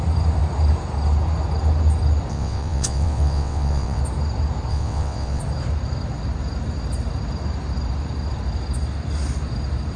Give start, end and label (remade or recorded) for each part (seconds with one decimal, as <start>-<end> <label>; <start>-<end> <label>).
0.0-2.3 recorded; 2.3-4.0 remade; 4.0-4.7 recorded; 4.7-5.4 remade; 5.4-10.0 recorded